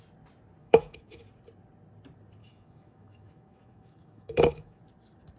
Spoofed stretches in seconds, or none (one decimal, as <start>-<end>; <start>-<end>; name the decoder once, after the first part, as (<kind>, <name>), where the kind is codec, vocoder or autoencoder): 0.6-1.2 (autoencoder, DAC-VAE); 2.4-4.8